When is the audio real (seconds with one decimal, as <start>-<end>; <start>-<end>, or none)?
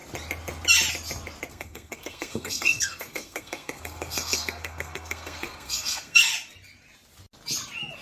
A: 0.0-1.5; 6.3-8.0